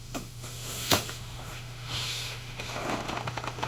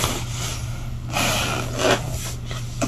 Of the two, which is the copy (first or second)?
first